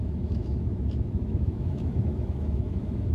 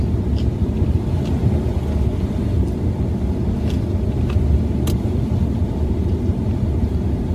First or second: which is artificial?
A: first